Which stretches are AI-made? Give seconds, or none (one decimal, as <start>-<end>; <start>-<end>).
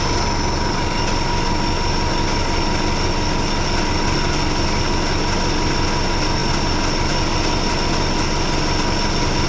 none